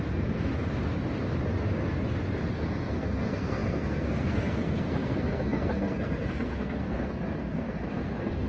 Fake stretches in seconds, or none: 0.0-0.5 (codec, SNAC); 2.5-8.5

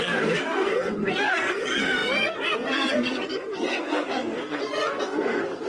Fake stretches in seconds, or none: 0.0-5.7 (codec, SNAC)

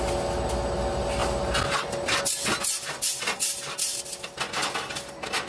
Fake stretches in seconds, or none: none